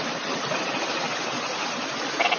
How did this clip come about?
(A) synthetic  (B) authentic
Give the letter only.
B